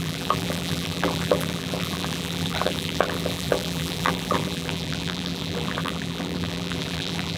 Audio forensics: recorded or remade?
remade